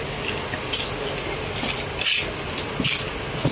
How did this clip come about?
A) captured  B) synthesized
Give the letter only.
A